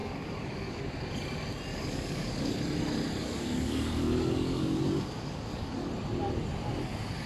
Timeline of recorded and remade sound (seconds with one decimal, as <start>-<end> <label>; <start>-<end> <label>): 0.0-0.8 remade; 0.8-1.7 recorded; 1.7-2.6 remade; 2.6-3.2 recorded; 3.2-5.9 remade; 5.9-7.3 recorded